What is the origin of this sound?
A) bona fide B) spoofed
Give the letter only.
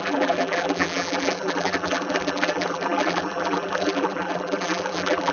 B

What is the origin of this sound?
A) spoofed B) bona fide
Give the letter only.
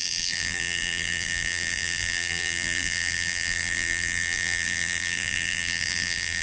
A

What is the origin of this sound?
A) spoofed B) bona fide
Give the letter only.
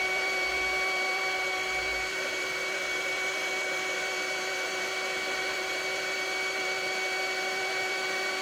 A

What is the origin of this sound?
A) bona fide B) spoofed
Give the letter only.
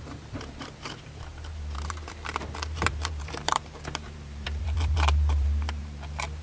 B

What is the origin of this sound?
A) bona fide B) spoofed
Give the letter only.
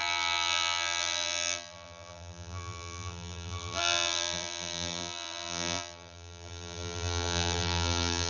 B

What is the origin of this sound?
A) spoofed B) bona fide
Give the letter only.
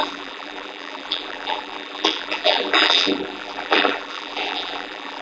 A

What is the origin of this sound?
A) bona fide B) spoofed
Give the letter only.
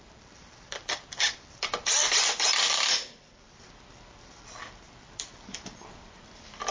B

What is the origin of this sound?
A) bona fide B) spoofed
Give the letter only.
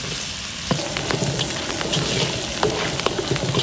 A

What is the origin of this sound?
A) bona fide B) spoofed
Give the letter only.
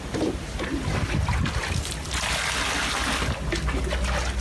A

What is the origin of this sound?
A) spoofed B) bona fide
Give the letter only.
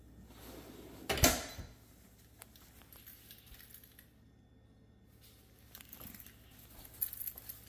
B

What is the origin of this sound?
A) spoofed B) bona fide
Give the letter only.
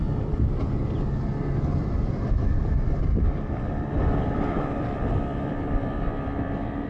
A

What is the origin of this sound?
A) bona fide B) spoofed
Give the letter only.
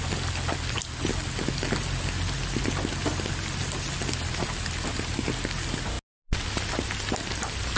A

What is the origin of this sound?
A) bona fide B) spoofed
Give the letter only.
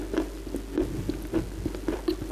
A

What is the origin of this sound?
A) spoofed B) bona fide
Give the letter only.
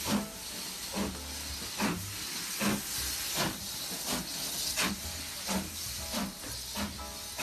B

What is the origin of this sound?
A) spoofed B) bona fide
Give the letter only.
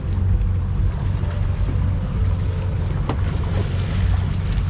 B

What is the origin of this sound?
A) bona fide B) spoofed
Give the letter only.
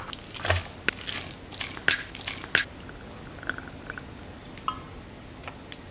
A